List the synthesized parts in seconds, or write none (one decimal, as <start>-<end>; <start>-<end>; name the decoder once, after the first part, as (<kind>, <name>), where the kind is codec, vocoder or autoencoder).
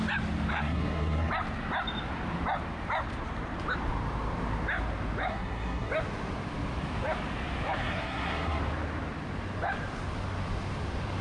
0.5-1.3 (codec, SNAC); 5.3-5.9; 7.8-8.6